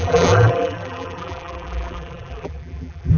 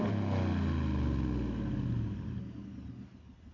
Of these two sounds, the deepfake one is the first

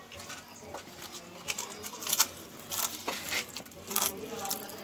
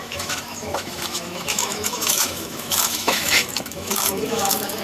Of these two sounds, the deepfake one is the second